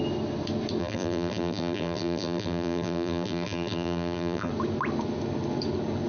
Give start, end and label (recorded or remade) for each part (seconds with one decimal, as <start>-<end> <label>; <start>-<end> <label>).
0.0-0.8 recorded; 0.8-4.5 remade; 4.5-6.1 recorded